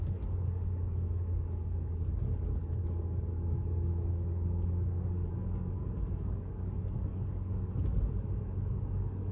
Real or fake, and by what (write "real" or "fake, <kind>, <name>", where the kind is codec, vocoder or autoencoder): fake, codec, DAC